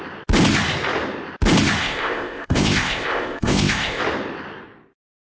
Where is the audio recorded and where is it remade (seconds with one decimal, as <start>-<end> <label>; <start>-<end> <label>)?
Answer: 0.0-1.8 recorded; 1.8-4.0 remade; 4.0-5.3 recorded